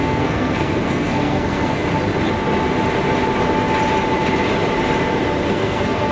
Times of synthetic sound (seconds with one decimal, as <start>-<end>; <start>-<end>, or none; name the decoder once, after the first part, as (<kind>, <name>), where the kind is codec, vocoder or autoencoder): 0.0-1.8 (codec, SNAC); 5.5-6.1